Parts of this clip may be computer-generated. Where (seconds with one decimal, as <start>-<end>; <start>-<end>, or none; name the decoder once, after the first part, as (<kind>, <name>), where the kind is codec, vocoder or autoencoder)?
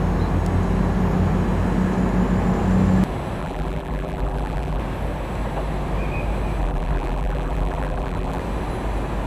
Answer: 3.4-4.8 (vocoder, BigVGAN v2); 6.6-8.4